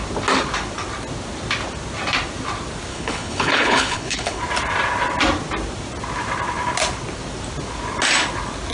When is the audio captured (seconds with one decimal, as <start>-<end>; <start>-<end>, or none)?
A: 0.0-2.9; 4.4-8.7